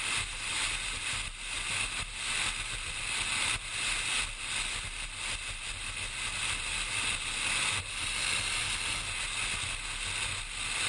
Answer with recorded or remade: recorded